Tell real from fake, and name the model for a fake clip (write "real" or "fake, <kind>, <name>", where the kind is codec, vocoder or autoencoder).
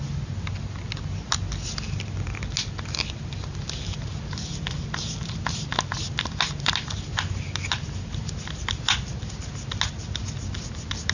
real